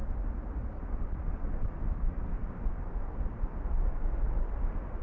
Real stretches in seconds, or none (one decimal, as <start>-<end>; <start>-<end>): 0.0-5.0